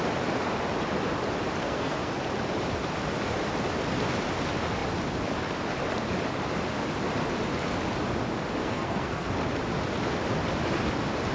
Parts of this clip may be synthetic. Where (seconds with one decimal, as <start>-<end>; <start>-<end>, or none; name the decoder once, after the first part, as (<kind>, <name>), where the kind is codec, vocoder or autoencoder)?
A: 1.6-2.1 (codec, SNAC); 8.6-9.3